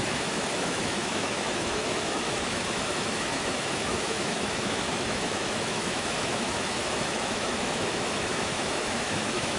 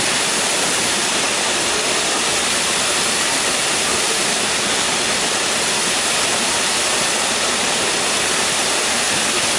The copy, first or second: first